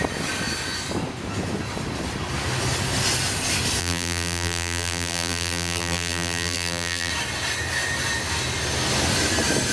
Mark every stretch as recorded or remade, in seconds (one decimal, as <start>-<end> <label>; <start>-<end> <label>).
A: 0.0-3.8 recorded; 3.8-7.1 remade; 7.1-9.7 recorded